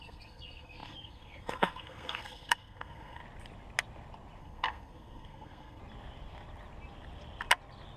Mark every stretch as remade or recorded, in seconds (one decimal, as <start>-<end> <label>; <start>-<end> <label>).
0.0-3.2 remade; 3.2-4.4 recorded; 4.4-5.8 remade; 5.8-8.0 recorded